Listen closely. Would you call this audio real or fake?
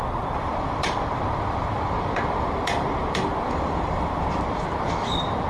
fake